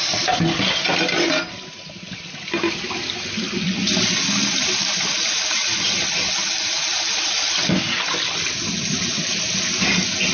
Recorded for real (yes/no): yes